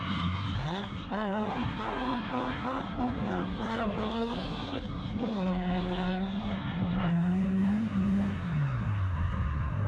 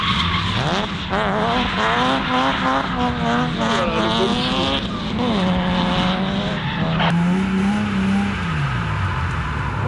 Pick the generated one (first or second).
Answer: first